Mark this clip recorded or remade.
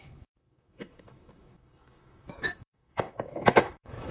remade